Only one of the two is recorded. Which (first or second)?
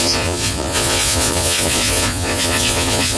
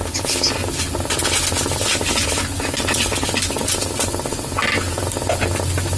second